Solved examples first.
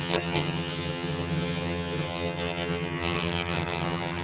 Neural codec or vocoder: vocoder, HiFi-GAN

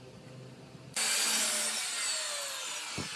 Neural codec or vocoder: none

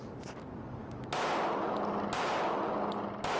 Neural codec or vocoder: none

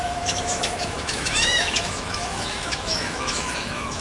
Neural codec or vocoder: autoencoder, DAC-VAE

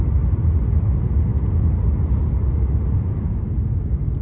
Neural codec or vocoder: none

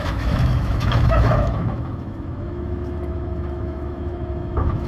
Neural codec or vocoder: autoencoder, DAC-VAE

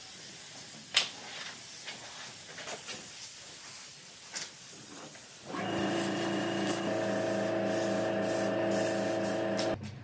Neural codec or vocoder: none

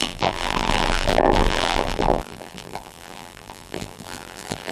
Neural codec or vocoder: vocoder, BigVGAN v2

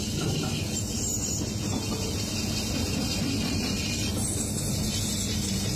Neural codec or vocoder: none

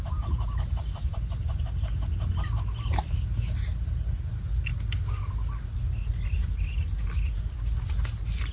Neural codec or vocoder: none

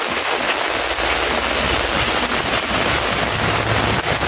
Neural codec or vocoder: none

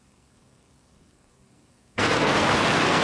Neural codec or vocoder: codec, SNAC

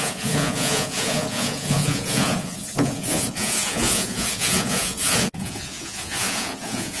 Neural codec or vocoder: vocoder, Vocos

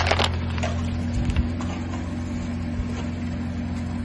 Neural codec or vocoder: none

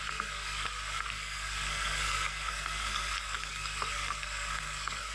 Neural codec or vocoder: codec, SNAC